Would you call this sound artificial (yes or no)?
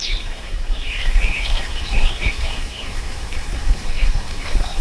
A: yes